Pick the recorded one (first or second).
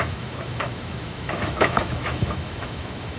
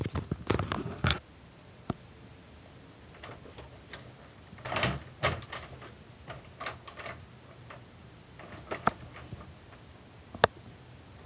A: second